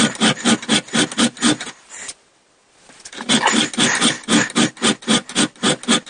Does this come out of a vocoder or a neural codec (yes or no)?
no